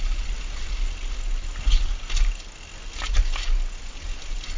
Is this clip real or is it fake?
real